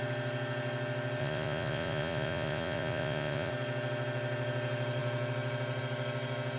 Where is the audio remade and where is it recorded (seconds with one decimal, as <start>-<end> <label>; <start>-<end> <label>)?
0.0-1.2 recorded; 1.2-3.5 remade; 3.5-6.6 recorded